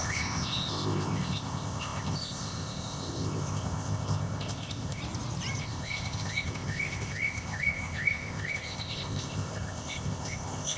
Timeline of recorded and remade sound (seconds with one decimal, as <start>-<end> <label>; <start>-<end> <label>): 0.0-5.0 remade; 5.0-5.6 recorded; 5.6-10.8 remade